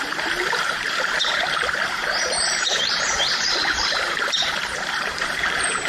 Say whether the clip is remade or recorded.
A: remade